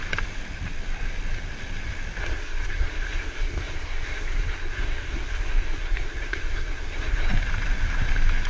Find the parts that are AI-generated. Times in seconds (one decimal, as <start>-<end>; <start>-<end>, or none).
2.2-7.3